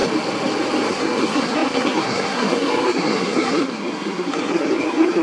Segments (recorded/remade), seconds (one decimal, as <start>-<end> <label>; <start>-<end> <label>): 0.0-0.9 recorded; 0.9-5.2 remade

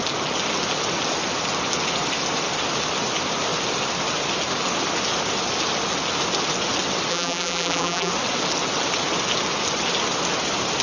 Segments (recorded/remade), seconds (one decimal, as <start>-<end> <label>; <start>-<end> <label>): 0.0-7.1 recorded; 7.1-8.1 remade; 8.1-10.8 recorded

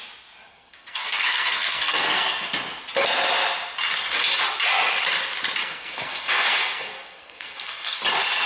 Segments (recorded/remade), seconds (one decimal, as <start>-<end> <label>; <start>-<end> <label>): 0.0-0.5 recorded; 0.5-2.5 remade; 2.5-5.6 recorded; 5.6-8.0 remade; 8.0-8.5 recorded

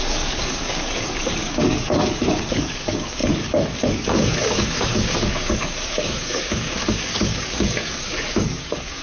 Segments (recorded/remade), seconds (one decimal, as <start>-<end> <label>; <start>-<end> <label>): 0.0-9.0 remade